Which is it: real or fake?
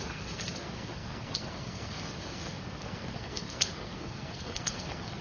fake